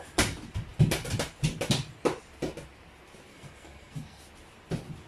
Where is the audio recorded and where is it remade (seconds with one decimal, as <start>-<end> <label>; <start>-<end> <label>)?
0.0-3.3 recorded; 3.3-4.2 remade; 4.2-5.1 recorded